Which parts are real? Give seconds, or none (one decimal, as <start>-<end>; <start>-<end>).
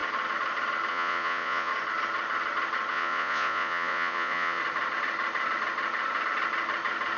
0.0-0.9; 1.7-2.9; 4.6-7.2